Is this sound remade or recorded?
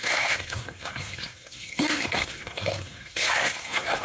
remade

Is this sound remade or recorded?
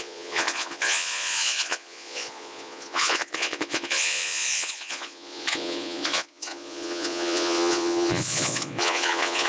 remade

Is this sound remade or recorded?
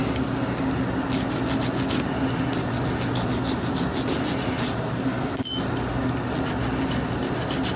recorded